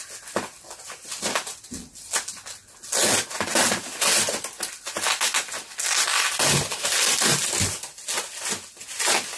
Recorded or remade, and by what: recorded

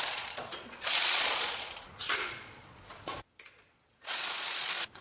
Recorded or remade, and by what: remade, vocoder, Vocos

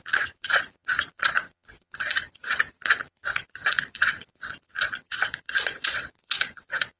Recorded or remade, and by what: remade, vocoder, Vocos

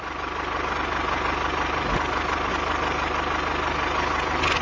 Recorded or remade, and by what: recorded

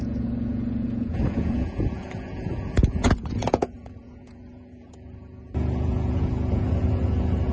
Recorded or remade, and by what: remade, vocoder, Vocos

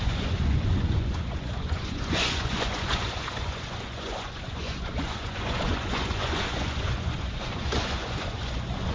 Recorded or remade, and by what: remade, vocoder, Vocos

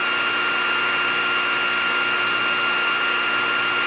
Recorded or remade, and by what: recorded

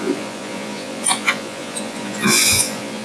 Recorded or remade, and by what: remade, vocoder, Vocos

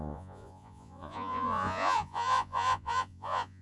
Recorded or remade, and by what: remade, vocoder, Vocos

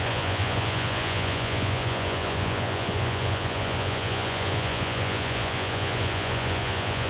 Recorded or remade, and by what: remade, vocoder, Vocos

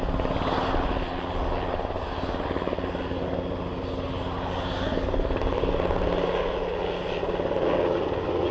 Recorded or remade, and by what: recorded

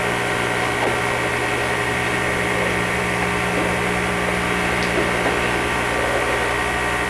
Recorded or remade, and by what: recorded